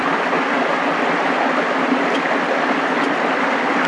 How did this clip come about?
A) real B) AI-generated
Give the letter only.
A